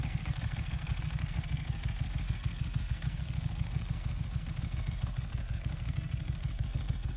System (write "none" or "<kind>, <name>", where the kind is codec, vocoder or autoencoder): codec, SNAC